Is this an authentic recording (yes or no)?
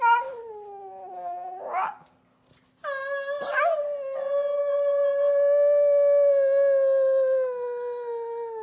yes